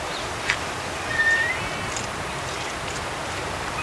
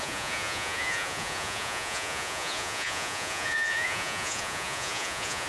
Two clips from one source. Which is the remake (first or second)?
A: second